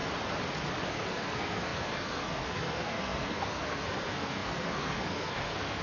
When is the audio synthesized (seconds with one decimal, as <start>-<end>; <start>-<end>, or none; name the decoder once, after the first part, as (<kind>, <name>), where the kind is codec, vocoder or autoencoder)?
0.9-5.8 (codec, SNAC)